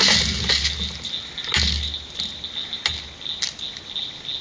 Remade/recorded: recorded